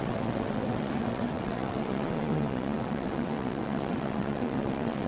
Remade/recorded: remade